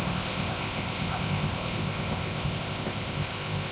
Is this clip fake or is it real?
fake